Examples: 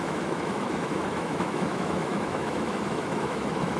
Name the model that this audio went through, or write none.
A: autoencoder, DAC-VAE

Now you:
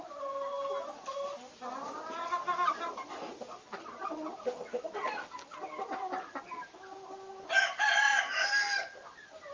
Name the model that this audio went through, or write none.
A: none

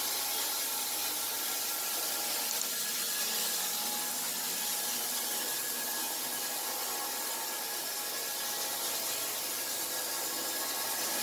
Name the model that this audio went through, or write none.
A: none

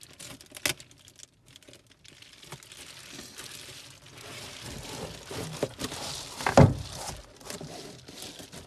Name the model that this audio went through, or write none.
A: none